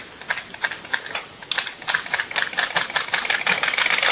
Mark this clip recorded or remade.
recorded